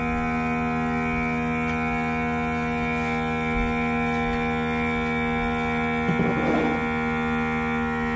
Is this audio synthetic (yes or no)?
no